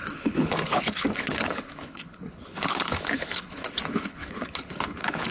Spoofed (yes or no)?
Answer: yes